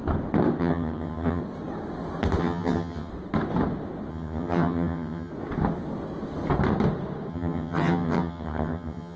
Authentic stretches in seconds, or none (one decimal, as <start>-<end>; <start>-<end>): 0.0-0.6; 1.4-2.4; 3.1-4.1; 5.3-7.3